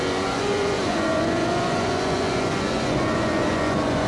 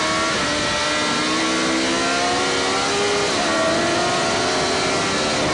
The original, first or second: second